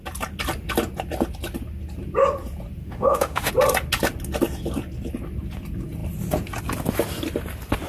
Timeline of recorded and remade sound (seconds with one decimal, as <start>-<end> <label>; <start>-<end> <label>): 0.0-2.8 recorded; 2.8-3.5 remade; 3.5-7.9 recorded